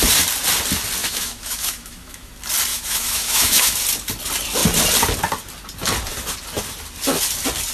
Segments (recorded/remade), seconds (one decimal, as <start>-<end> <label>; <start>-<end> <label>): 0.0-1.0 recorded; 1.0-2.3 remade; 2.3-2.7 recorded; 2.7-3.8 remade; 3.8-7.7 recorded